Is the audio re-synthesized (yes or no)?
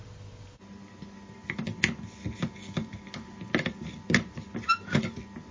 no